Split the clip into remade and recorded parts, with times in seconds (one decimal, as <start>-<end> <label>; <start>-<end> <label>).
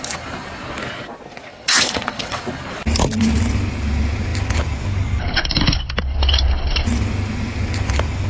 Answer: 0.0-1.5 recorded; 1.5-2.4 remade; 2.4-8.3 recorded